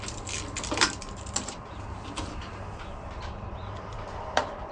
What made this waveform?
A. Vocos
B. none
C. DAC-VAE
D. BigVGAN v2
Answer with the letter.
D